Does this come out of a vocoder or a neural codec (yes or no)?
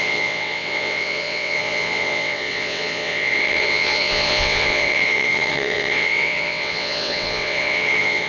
yes